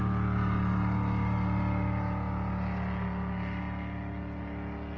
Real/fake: real